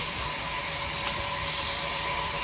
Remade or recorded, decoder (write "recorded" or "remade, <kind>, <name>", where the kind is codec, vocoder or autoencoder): remade, vocoder, BigVGAN v2